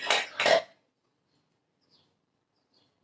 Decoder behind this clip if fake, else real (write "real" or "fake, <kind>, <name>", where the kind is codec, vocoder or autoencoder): real